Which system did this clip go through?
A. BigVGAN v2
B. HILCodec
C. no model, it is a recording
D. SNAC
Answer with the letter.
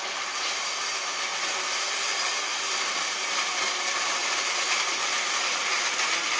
A